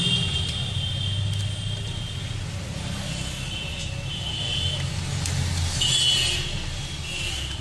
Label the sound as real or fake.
real